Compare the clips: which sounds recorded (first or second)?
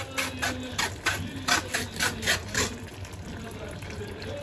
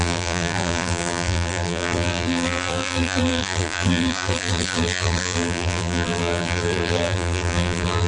first